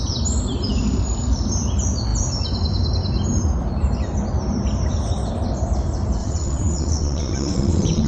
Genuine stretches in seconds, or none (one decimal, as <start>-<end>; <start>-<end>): 0.0-6.2